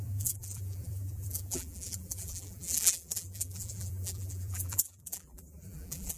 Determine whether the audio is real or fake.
fake